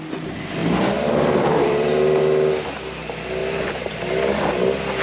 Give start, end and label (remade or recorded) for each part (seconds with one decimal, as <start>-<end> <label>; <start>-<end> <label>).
0.0-0.6 recorded; 0.6-2.2 remade; 2.2-3.4 recorded; 3.4-4.5 remade; 4.5-5.0 recorded